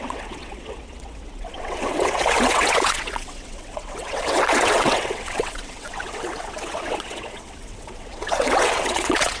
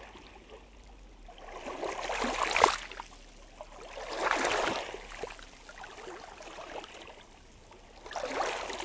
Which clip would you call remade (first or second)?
first